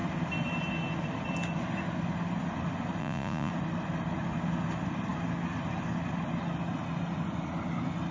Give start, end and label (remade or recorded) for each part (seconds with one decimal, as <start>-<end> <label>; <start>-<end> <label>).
0.0-3.0 recorded; 3.0-3.5 remade; 3.5-8.1 recorded